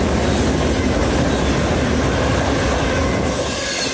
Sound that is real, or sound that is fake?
real